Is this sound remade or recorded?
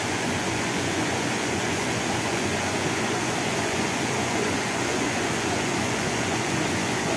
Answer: remade